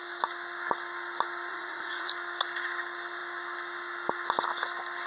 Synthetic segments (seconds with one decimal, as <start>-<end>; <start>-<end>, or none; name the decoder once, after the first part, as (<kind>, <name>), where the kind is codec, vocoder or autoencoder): 1.5-2.1 (vocoder, Vocos)